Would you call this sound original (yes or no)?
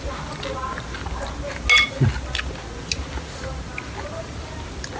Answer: yes